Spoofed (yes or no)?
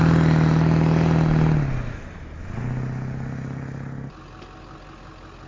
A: no